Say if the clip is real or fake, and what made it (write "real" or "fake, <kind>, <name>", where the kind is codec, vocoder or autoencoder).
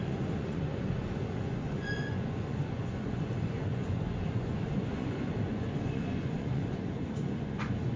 fake, vocoder, Vocos